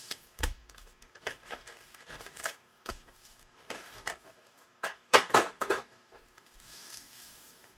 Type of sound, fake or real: fake